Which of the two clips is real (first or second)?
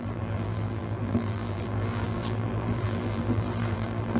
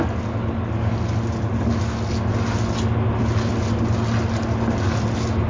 second